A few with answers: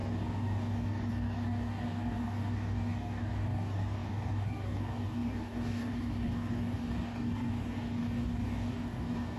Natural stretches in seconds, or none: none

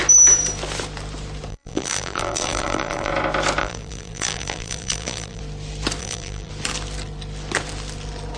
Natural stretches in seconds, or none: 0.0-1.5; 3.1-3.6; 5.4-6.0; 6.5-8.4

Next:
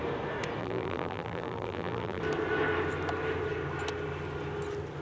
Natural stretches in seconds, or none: 0.0-0.6; 2.2-5.0

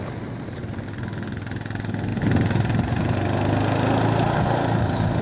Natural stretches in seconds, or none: 0.0-5.2

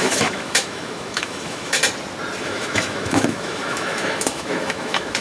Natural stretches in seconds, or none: 1.8-2.4

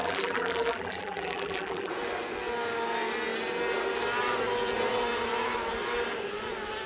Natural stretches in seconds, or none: 1.9-6.9

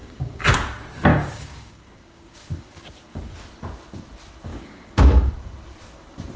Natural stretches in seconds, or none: 0.5-1.1; 3.4-4.5; 5.3-6.4